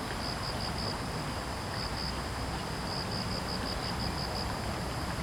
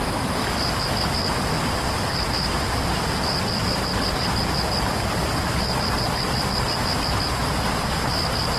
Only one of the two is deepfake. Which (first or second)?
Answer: second